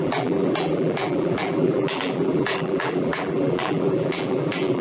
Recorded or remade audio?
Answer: remade